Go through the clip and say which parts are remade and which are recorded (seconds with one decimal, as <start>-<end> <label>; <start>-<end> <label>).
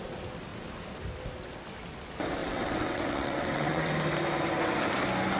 0.0-2.4 recorded; 2.4-3.9 remade; 3.9-5.4 recorded